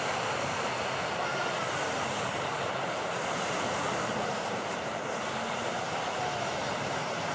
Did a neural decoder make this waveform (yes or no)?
yes